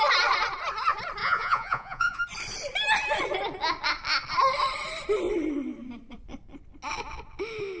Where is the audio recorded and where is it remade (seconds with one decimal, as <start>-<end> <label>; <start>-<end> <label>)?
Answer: 0.0-1.2 recorded; 1.2-2.2 remade; 2.2-7.8 recorded